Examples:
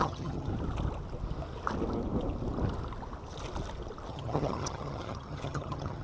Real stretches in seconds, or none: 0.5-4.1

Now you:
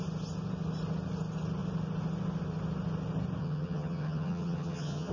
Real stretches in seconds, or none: 0.0-3.4